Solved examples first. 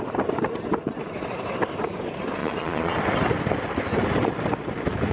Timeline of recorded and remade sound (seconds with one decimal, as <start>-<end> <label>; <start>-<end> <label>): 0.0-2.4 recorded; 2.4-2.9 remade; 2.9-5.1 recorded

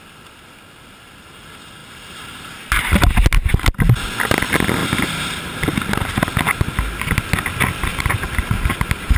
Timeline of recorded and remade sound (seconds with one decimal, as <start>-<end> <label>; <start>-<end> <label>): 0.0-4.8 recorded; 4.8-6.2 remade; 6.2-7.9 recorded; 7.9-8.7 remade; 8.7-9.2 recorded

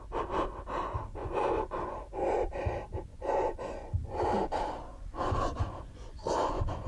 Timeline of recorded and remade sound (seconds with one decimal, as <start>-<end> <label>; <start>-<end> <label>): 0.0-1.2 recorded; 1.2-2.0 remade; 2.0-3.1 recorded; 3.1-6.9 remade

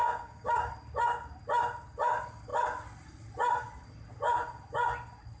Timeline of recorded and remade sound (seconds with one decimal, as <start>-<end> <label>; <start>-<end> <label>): 0.0-0.7 remade; 0.7-5.4 recorded

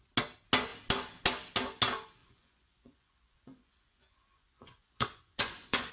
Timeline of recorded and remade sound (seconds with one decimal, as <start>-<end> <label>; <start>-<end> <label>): 0.0-2.2 recorded; 2.2-5.9 remade

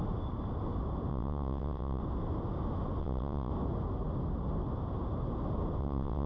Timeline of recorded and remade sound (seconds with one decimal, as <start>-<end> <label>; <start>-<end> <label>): 0.0-1.1 recorded; 1.1-2.0 remade; 2.0-3.0 recorded; 3.0-3.5 remade; 3.5-5.8 recorded; 5.8-6.3 remade

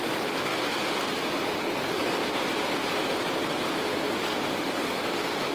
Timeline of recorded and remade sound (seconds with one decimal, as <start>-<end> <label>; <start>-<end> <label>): 0.0-0.5 remade; 0.5-1.6 recorded; 1.6-2.2 remade; 2.2-4.2 recorded; 4.2-5.5 remade